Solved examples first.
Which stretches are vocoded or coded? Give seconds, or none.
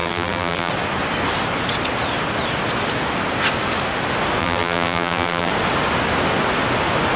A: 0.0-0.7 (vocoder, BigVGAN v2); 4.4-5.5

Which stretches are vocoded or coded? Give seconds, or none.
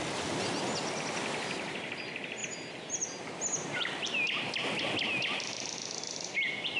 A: none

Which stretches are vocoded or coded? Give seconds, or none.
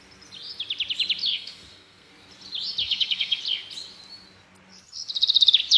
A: 1.3-2.1 (codec, SNAC); 2.8-3.4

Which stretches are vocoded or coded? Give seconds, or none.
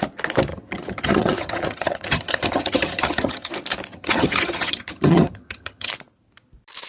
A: 0.5-3.5 (vocoder, HiFi-GAN); 3.9-5.9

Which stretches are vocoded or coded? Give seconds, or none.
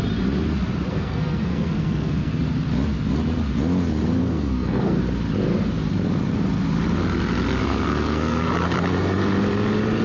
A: 0.9-2.3 (codec, SNAC); 4.2-5.0; 7.6-8.5